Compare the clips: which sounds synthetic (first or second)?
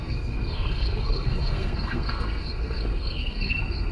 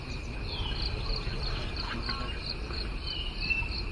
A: first